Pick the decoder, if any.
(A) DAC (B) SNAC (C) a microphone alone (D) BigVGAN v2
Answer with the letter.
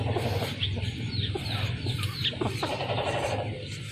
D